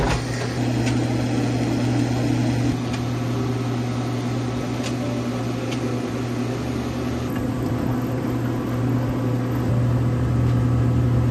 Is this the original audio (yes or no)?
yes